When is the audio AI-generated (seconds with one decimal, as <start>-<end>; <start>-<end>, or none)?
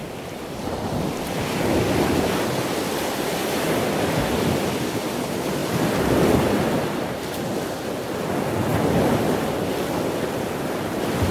none